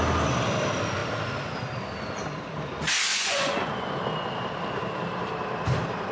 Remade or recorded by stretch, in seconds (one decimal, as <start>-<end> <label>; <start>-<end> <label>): 0.0-3.1 recorded; 3.1-4.0 remade; 4.0-6.1 recorded